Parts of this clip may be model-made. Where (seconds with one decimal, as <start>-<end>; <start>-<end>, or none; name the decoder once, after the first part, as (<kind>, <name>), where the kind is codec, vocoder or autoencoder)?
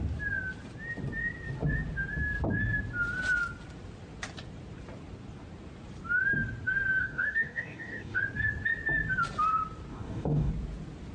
7.0-8.2 (codec, DAC); 9.9-10.5